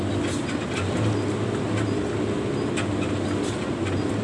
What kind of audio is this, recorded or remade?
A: recorded